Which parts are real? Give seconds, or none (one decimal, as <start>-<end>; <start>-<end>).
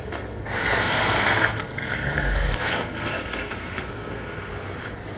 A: 4.5-5.2